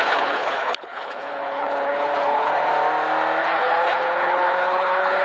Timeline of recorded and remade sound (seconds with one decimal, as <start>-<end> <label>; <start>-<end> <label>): 0.0-2.7 remade; 2.7-3.4 recorded; 3.4-5.2 remade